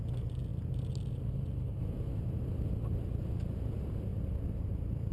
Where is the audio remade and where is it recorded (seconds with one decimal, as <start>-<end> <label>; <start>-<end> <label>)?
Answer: 0.0-5.1 recorded